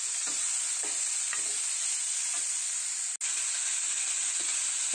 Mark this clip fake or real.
real